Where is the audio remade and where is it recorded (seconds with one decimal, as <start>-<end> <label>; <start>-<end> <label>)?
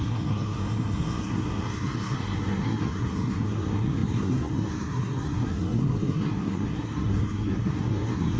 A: 0.0-8.4 remade